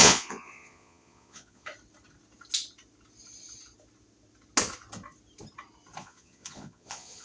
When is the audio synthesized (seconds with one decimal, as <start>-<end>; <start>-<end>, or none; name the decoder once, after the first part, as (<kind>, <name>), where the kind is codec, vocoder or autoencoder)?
0.0-1.7 (vocoder, Vocos); 6.0-7.2